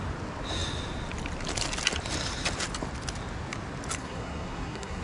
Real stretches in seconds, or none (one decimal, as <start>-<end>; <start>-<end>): 0.0-4.0